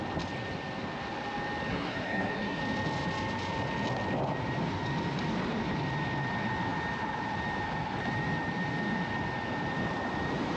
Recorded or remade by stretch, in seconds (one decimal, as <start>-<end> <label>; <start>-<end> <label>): 0.0-1.7 recorded; 1.7-2.6 remade; 2.6-10.6 recorded